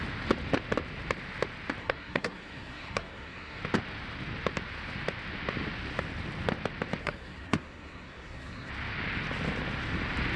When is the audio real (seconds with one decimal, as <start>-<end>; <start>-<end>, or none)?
0.0-1.8; 3.6-7.0; 8.7-10.4